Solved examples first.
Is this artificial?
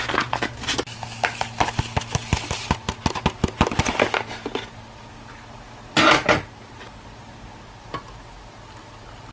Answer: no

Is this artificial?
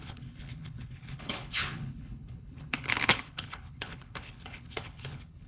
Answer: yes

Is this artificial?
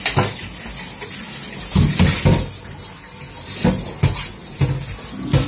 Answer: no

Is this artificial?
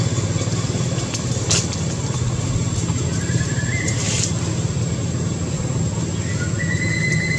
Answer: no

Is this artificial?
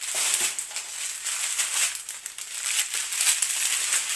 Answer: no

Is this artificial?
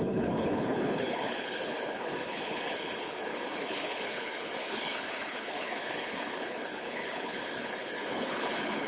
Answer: yes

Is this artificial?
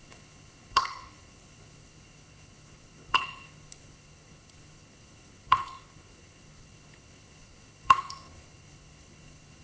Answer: yes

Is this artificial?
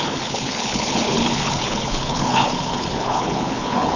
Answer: yes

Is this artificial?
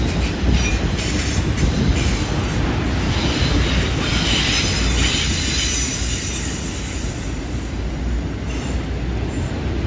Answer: no